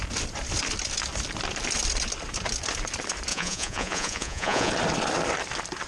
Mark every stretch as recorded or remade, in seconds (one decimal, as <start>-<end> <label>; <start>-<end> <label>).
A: 0.0-3.3 recorded; 3.3-4.7 remade; 4.7-5.9 recorded